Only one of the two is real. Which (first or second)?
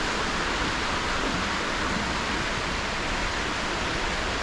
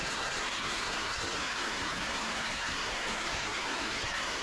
first